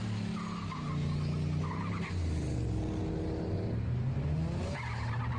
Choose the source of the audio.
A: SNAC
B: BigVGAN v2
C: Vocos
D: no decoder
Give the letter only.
D